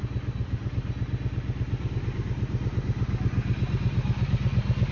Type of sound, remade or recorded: recorded